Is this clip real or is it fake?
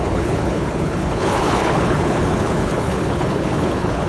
fake